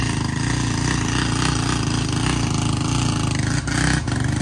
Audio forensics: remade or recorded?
recorded